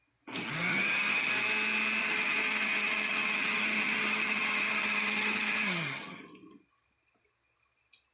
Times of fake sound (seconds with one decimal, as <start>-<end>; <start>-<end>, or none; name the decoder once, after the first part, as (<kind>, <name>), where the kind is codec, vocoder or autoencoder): 0.7-1.3 (vocoder, HiFi-GAN); 2.0-6.2

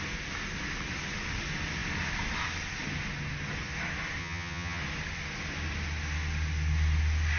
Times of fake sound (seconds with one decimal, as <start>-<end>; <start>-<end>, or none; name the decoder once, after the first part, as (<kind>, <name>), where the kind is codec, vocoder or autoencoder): 4.2-4.8 (vocoder, HiFi-GAN)

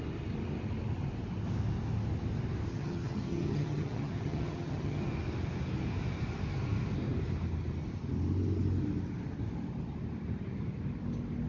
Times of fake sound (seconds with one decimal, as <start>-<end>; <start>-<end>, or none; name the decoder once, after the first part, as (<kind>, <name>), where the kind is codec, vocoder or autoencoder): 2.7-5.1 (vocoder, HiFi-GAN)

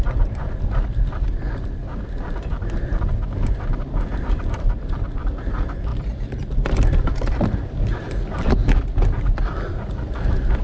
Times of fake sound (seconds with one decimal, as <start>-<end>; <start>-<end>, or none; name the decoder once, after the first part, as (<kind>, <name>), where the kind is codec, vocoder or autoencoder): none